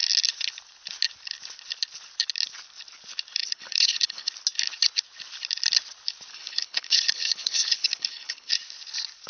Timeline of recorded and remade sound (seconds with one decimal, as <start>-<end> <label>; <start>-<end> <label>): 0.0-3.4 recorded; 3.4-4.3 remade; 4.3-6.3 recorded; 6.3-8.5 remade; 8.5-9.3 recorded

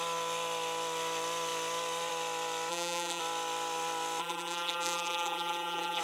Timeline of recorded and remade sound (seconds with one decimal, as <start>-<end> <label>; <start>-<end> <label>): 0.0-2.7 recorded; 2.7-3.2 remade; 3.2-4.2 recorded; 4.2-6.0 remade

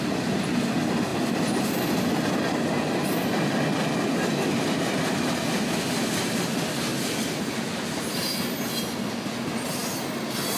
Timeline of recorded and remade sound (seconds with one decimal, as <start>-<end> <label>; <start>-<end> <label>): 0.0-1.1 recorded; 1.1-1.8 remade; 1.8-10.6 recorded

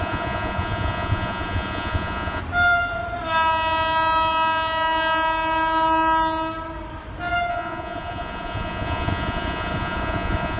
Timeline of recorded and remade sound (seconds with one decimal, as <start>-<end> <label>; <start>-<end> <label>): 0.0-2.4 remade; 2.4-7.5 recorded; 7.5-10.6 remade